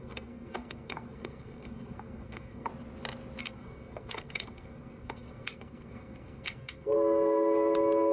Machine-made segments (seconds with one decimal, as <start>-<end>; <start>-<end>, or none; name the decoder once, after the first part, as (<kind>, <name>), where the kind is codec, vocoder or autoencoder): 0.0-2.7 (codec, SNAC); 3.4-8.1